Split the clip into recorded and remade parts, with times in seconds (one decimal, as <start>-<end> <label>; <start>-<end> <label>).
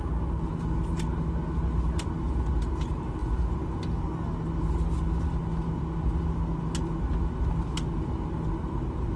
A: 0.0-9.2 recorded